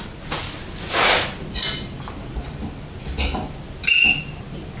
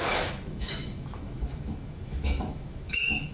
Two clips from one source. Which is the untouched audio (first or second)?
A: first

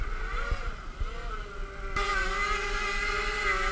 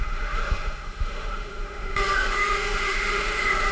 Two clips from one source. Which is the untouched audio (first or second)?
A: first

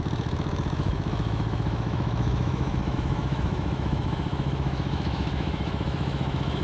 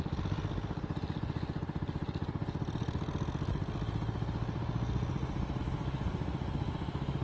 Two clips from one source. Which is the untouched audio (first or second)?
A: second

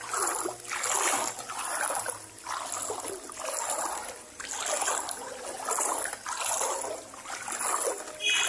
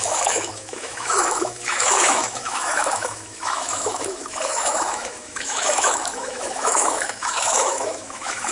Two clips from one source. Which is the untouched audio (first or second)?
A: first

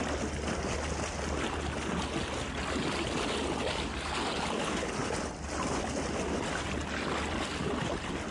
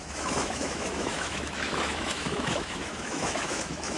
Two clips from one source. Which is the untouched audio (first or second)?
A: first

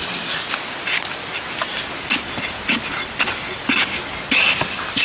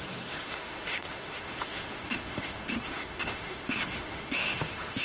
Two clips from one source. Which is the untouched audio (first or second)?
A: first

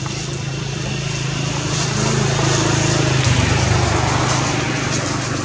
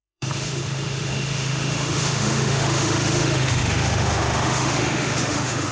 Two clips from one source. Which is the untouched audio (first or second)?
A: first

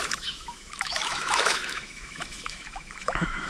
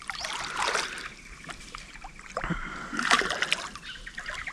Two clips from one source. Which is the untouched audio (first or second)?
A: second